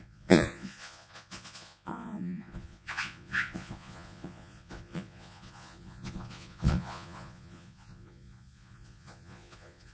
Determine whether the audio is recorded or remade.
remade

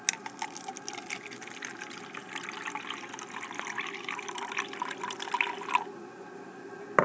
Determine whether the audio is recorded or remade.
recorded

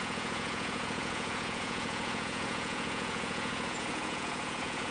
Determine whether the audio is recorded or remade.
remade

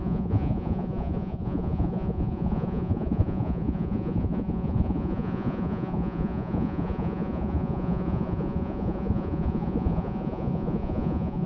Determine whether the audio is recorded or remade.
remade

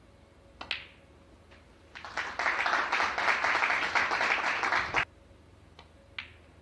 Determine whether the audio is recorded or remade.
recorded